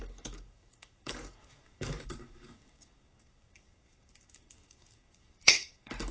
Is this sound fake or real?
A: fake